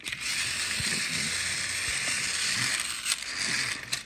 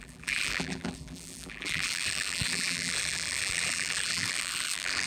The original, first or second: first